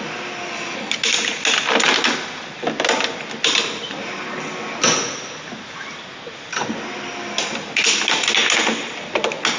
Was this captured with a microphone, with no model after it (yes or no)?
yes